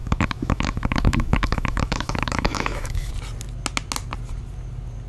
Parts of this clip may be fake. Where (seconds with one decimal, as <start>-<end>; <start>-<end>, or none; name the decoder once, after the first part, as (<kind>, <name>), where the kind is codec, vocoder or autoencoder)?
0.0-3.1 (autoencoder, DAC-VAE)